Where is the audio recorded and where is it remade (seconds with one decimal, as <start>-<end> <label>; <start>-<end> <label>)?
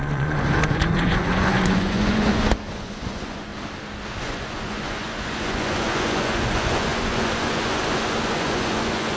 0.0-3.5 remade; 3.5-4.2 recorded; 4.2-9.2 remade